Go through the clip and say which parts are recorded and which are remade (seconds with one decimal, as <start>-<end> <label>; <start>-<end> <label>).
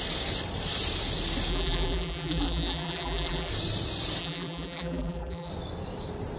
0.0-1.5 recorded; 1.5-3.5 remade; 3.5-4.2 recorded; 4.2-5.5 remade; 5.5-6.4 recorded